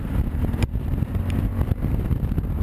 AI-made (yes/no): yes